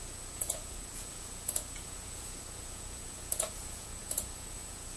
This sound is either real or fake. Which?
fake